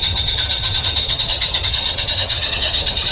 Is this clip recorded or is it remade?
remade